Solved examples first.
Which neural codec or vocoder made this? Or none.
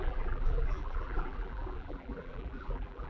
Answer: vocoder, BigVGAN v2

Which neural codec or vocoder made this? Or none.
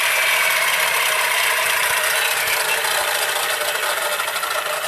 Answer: none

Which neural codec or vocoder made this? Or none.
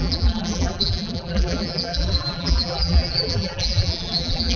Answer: vocoder, BigVGAN v2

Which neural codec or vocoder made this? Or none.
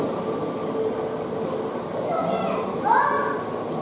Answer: none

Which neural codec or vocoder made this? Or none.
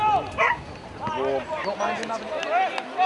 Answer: none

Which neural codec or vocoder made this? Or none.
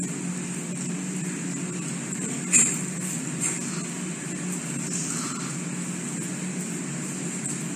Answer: none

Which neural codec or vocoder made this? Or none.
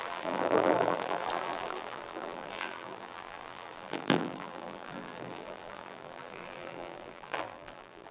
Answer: vocoder, BigVGAN v2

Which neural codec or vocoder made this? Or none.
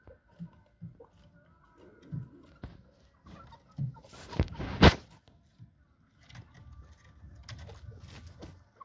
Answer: none